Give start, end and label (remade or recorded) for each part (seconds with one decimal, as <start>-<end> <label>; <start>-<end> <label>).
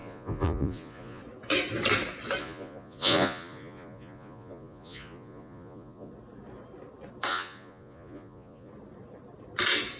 0.0-1.2 remade; 1.2-2.4 recorded; 2.4-6.1 remade; 6.1-7.3 recorded; 7.3-8.7 remade; 8.7-10.0 recorded